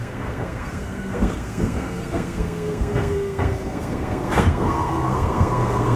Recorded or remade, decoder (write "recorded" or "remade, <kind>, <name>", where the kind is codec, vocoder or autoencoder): remade, codec, SNAC